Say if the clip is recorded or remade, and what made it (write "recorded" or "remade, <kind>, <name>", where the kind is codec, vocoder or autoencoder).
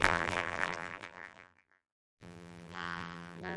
remade, vocoder, BigVGAN v2